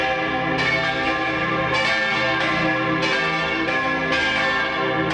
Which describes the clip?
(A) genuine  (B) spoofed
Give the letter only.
A